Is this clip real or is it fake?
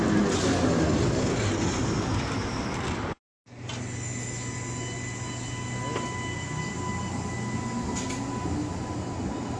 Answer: real